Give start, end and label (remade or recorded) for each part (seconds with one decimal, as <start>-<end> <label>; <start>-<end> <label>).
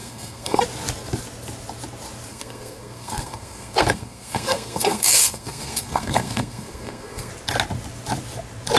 0.0-0.6 remade; 0.6-2.3 recorded; 2.3-7.3 remade; 7.3-8.8 recorded